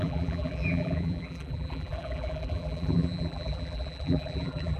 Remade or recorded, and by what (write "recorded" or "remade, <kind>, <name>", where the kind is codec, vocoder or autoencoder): remade, vocoder, BigVGAN v2